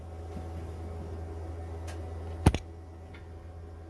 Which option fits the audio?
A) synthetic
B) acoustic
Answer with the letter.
B